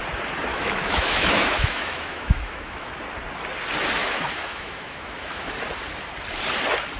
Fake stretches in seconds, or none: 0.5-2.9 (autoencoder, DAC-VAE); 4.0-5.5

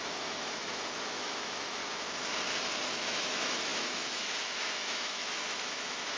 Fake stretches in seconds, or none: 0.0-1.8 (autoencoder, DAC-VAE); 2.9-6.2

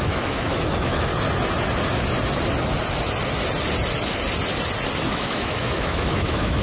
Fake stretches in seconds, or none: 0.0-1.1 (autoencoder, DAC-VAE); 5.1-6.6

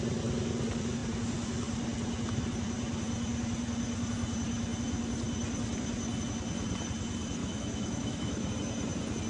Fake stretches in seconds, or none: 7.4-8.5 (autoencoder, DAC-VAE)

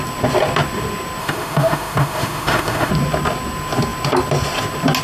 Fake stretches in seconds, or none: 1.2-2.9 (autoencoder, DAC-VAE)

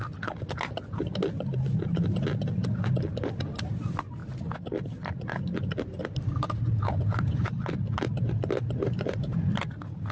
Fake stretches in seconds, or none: none

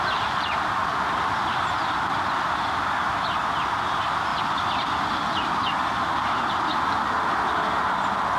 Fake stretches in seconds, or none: none

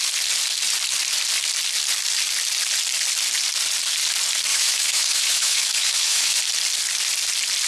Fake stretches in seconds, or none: 4.5-6.4 (autoencoder, DAC-VAE)